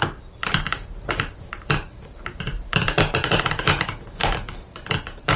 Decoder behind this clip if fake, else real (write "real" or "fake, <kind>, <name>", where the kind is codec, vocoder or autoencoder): fake, vocoder, BigVGAN v2